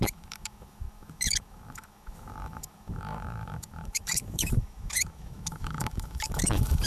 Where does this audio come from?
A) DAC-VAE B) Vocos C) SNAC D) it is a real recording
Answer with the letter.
A